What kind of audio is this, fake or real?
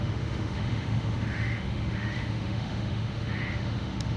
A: fake